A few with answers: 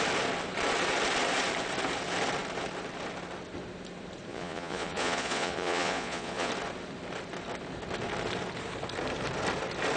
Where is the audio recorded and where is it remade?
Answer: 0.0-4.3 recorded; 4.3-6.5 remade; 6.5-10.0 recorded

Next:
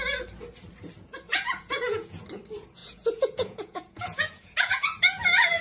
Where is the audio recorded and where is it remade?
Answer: 0.0-1.3 recorded; 1.3-2.2 remade; 2.2-2.8 recorded; 2.8-5.6 remade